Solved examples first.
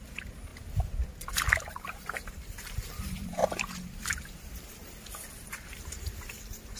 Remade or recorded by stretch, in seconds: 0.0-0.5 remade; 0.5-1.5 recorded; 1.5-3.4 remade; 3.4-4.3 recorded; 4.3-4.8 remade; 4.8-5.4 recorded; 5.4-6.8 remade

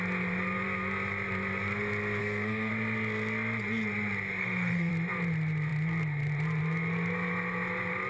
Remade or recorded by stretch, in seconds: 0.0-2.2 recorded; 2.2-2.7 remade; 2.7-4.4 recorded; 4.4-4.9 remade; 4.9-8.1 recorded

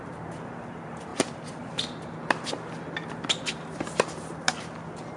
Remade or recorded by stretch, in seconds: 0.0-5.2 recorded

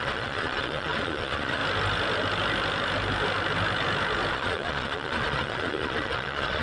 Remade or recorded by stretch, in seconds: 0.0-1.6 remade; 1.6-4.3 recorded; 4.3-6.6 remade